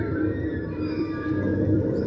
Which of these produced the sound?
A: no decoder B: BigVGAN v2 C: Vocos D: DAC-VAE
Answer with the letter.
B